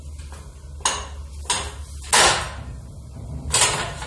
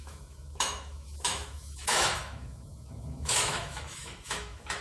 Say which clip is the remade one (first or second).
second